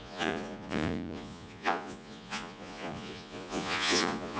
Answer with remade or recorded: remade